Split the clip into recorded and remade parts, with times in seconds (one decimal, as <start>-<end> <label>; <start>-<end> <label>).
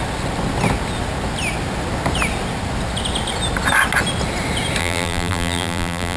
0.0-4.8 recorded; 4.8-6.2 remade